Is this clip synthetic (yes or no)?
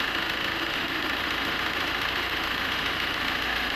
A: yes